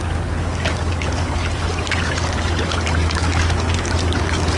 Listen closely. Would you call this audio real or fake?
fake